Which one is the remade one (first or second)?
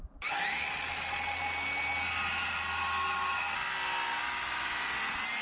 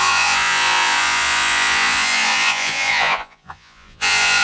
second